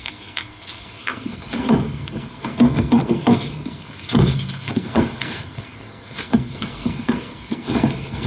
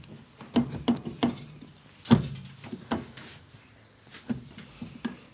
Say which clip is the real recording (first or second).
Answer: second